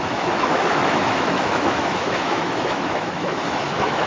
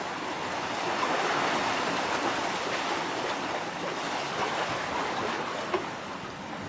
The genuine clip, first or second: second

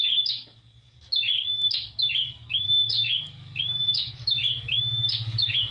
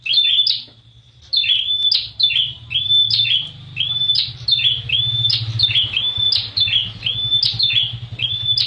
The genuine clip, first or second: second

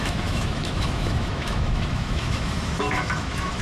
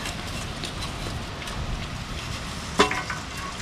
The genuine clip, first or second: second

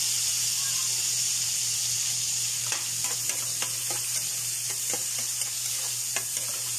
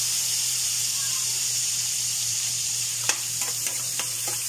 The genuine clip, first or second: first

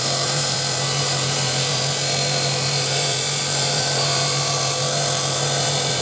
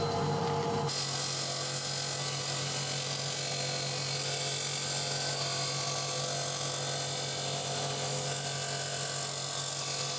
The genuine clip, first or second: second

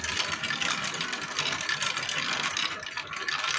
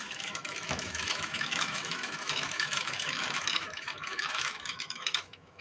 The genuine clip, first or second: first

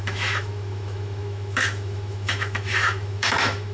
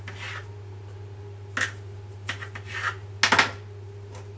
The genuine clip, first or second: second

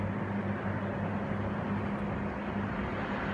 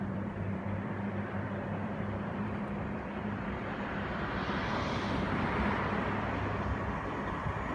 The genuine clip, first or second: first